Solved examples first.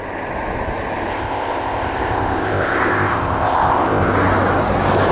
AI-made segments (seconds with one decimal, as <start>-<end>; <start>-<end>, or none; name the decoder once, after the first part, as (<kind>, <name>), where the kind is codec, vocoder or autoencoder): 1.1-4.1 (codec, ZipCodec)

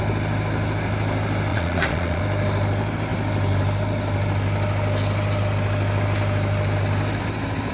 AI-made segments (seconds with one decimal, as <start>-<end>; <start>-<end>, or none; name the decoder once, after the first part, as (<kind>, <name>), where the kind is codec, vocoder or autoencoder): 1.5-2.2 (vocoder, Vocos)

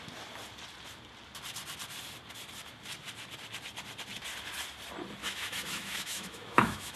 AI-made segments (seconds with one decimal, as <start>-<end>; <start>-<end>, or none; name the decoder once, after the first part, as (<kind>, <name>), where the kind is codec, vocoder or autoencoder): 5.2-7.0 (autoencoder, DAC-VAE)

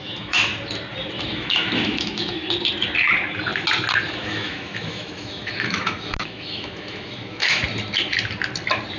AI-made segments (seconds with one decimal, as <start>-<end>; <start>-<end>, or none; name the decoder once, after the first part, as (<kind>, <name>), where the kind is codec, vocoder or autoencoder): 0.0-0.5 (autoencoder, DAC-VAE); 1.3-2.4; 4.1-7.6